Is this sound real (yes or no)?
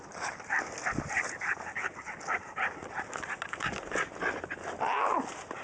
yes